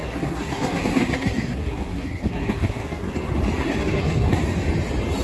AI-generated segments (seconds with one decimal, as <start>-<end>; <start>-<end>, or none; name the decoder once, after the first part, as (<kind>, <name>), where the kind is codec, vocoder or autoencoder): 0.0-3.1 (codec, SNAC); 3.6-4.4